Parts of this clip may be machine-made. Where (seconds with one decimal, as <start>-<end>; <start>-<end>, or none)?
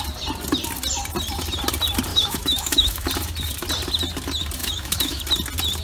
2.1-3.1; 4.6-5.2